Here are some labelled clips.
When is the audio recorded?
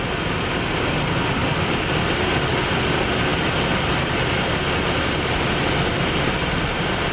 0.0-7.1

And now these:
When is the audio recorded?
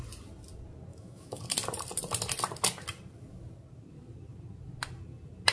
0.0-0.9; 1.4-5.5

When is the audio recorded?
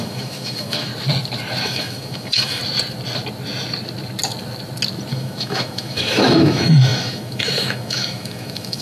0.9-1.6; 2.6-5.1